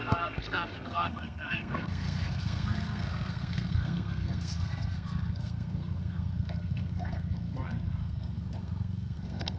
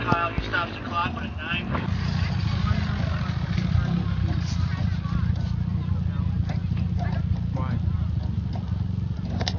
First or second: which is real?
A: second